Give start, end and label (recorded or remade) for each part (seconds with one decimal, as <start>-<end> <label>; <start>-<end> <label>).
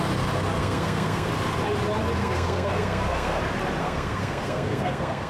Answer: 0.0-0.6 recorded; 0.6-1.3 remade; 1.3-2.2 recorded; 2.2-3.4 remade; 3.4-3.8 recorded; 3.8-5.3 remade